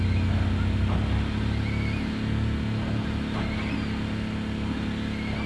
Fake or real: real